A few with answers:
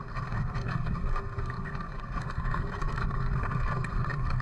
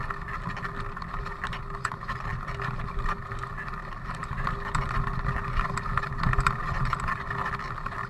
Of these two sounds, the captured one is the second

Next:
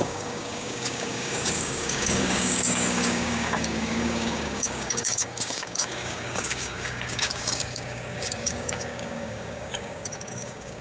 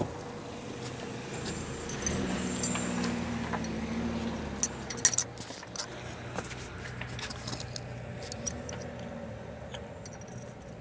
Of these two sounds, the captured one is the second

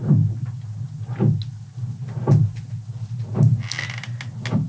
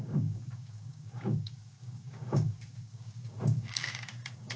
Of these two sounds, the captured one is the first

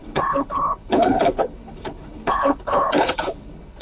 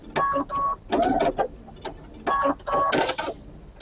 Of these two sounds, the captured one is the second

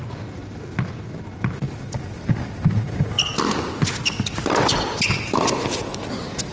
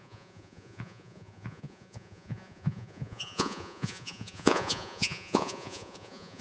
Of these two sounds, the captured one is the first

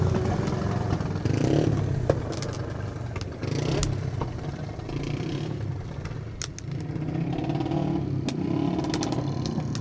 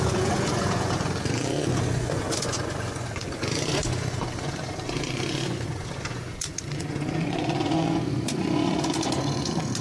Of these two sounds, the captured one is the first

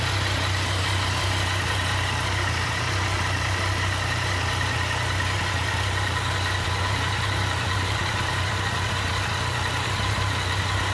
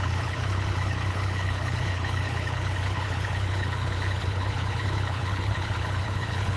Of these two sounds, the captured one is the first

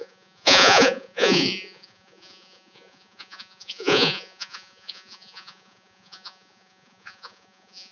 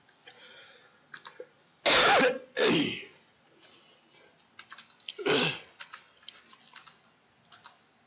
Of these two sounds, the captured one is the second